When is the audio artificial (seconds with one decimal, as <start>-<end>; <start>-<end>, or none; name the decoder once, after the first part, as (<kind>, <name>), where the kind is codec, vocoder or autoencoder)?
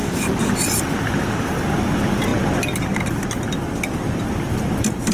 none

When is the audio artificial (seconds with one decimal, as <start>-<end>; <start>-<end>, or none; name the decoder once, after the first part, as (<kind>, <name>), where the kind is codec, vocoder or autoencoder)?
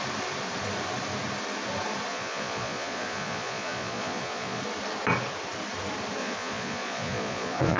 2.1-4.6 (vocoder, Vocos); 6.2-7.8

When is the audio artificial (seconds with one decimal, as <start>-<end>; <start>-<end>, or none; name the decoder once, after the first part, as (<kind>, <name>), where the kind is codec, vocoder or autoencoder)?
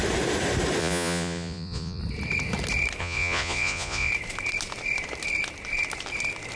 0.8-2.0 (vocoder, Vocos); 3.0-4.1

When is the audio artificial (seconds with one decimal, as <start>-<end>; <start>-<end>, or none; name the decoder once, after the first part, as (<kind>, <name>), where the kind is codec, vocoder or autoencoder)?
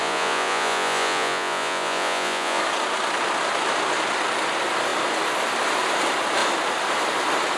0.0-2.6 (vocoder, Vocos)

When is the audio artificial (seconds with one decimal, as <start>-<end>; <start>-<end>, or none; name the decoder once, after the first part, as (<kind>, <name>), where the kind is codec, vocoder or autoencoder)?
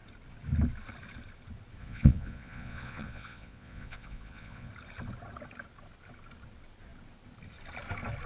1.8-4.7 (vocoder, Vocos)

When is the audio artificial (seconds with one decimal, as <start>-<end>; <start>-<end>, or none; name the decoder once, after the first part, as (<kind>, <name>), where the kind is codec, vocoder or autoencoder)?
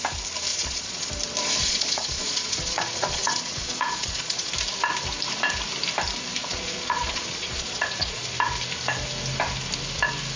0.5-1.1 (vocoder, Vocos); 1.6-4.5; 6.4-8.3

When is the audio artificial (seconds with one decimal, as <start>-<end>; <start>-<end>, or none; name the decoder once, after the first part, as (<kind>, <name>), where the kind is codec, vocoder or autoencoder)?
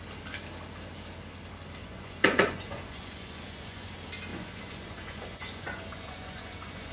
1.8-3.9 (vocoder, Vocos); 4.3-6.9